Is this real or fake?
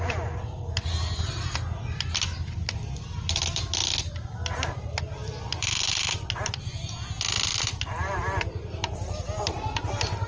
real